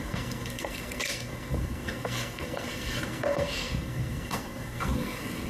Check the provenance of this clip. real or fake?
fake